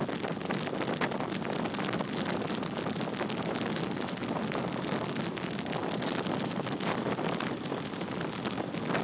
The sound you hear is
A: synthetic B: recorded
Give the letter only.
B